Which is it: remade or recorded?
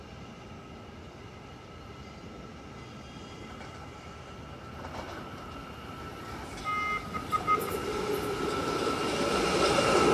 recorded